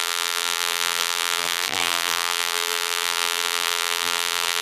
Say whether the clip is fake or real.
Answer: fake